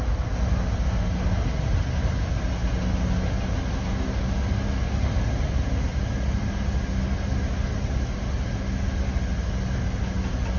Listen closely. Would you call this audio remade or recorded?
recorded